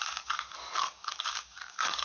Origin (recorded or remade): remade